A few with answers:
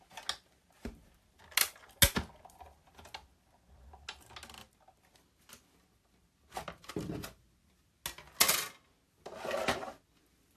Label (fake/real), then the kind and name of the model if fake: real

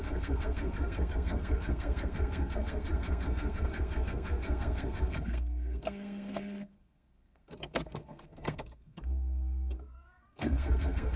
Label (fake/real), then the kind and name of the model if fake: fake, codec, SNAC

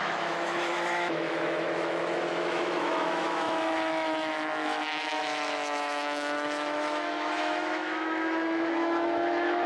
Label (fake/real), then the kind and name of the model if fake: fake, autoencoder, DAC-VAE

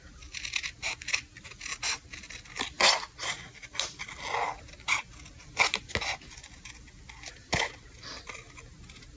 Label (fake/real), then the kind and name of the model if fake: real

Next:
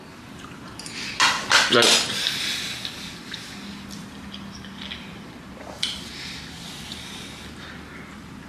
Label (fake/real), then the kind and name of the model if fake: real